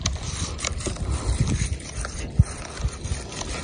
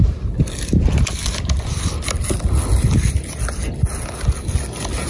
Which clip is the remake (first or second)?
first